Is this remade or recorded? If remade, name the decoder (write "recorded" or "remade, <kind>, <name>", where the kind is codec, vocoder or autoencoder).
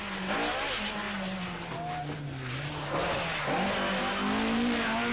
recorded